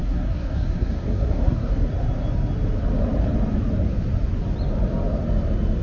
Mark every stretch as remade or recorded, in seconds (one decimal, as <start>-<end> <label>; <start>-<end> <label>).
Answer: 0.0-1.9 remade; 1.9-5.8 recorded

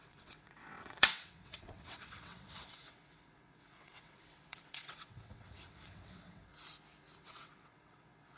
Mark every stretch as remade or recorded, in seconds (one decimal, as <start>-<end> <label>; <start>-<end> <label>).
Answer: 0.0-6.5 remade; 6.5-7.2 recorded; 7.2-8.4 remade

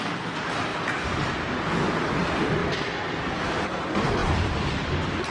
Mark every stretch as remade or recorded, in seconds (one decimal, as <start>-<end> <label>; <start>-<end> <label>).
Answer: 0.0-0.7 recorded; 0.7-1.3 remade; 1.3-2.6 recorded; 2.6-3.1 remade; 3.1-4.2 recorded; 4.2-5.3 remade

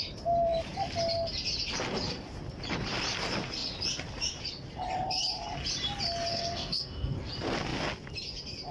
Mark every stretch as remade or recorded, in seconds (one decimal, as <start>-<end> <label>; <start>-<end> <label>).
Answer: 0.0-6.3 recorded; 6.3-7.3 remade; 7.3-8.7 recorded

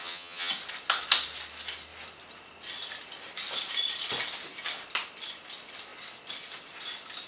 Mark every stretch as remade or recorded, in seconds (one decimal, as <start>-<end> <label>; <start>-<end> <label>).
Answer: 0.0-0.5 remade; 0.5-7.3 recorded

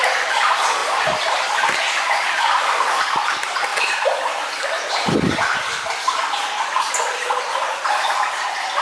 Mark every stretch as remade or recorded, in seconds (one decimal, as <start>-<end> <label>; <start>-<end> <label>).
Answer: 0.0-8.8 recorded

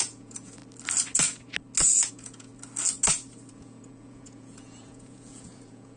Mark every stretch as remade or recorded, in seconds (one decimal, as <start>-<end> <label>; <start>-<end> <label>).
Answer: 0.0-0.6 remade; 0.6-2.1 recorded; 2.1-2.5 remade; 2.5-3.5 recorded; 3.5-6.0 remade